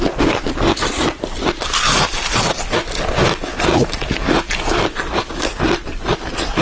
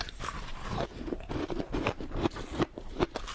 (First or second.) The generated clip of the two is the second